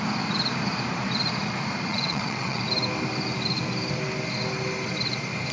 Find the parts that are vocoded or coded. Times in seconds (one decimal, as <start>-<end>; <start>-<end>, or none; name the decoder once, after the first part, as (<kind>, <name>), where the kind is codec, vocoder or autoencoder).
1.9-2.6 (vocoder, WaveNeXt)